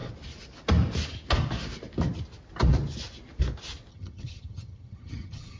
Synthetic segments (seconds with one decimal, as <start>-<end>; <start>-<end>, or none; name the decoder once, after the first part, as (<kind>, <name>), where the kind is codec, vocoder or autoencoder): 3.9-5.6 (vocoder, HiFi-GAN)